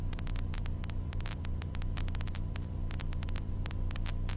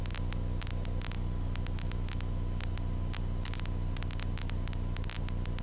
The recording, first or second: second